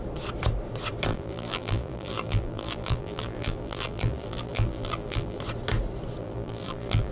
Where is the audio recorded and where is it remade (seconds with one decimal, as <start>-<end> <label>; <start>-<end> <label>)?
0.0-1.1 recorded; 1.1-5.4 remade; 5.4-6.2 recorded; 6.2-7.1 remade